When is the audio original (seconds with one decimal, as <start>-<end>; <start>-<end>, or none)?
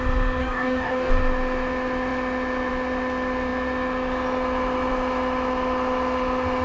0.0-0.4; 1.1-6.6